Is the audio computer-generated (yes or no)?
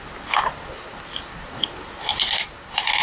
no